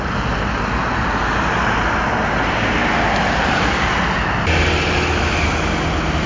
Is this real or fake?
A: real